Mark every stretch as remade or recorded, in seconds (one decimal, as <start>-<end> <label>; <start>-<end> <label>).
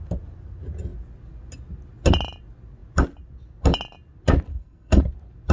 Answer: 0.0-4.5 recorded; 4.5-5.0 remade; 5.0-5.5 recorded